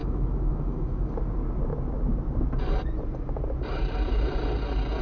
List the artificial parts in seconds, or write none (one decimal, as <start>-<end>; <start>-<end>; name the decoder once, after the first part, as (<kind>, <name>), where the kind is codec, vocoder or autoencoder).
0.0-1.1 (autoencoder, DAC-VAE)